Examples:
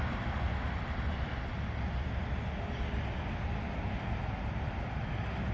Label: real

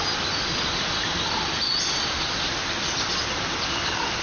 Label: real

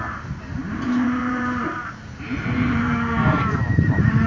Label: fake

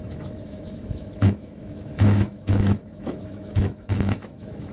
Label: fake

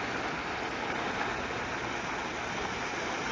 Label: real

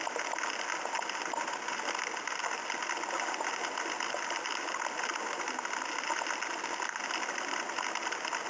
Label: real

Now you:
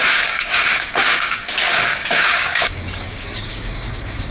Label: fake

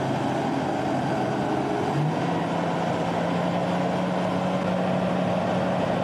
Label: real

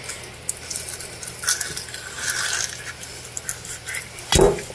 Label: real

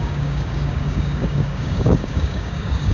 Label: fake